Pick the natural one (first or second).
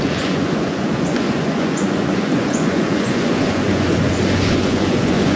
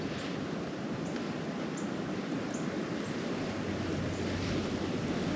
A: second